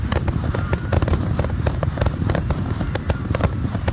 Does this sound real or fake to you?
fake